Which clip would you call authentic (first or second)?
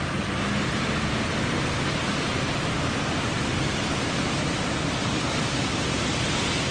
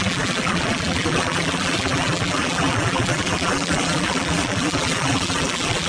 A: first